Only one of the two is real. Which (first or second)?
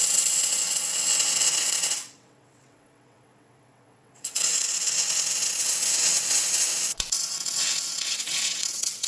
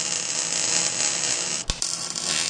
second